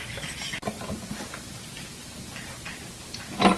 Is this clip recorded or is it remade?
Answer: recorded